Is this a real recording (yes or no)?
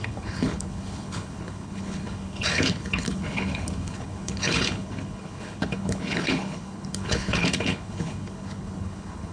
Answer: no